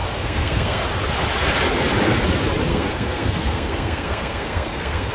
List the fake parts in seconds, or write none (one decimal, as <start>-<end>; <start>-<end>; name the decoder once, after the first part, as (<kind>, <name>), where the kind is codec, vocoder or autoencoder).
0.0-0.8 (codec, SNAC); 2.7-5.1